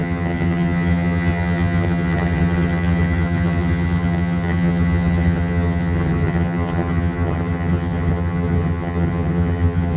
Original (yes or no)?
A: no